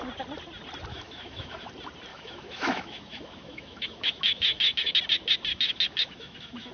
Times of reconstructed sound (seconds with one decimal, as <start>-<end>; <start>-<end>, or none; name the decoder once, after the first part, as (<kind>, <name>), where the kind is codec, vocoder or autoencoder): 0.9-1.7 (autoencoder, DAC-VAE); 2.1-5.0; 5.5-6.7